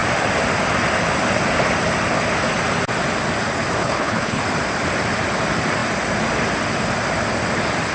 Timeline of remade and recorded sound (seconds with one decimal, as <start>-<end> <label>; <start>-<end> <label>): 0.0-3.8 recorded; 3.8-4.4 remade; 4.4-7.9 recorded

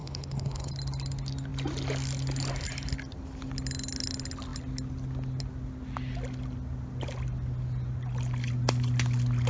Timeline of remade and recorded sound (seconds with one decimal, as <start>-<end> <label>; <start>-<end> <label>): 0.0-0.7 remade; 0.7-9.5 recorded

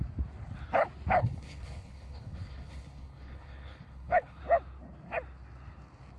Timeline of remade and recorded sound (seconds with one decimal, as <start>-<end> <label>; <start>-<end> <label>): 0.0-1.1 recorded; 1.1-4.4 remade; 4.4-6.2 recorded

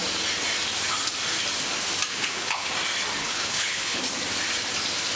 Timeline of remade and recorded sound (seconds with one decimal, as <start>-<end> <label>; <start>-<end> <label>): 0.0-2.1 recorded; 2.1-2.7 remade; 2.7-3.2 recorded; 3.2-4.0 remade; 4.0-5.2 recorded